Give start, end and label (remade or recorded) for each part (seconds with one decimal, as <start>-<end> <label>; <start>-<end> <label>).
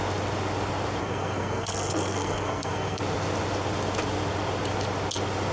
0.0-1.0 recorded; 1.0-3.0 remade; 3.0-5.5 recorded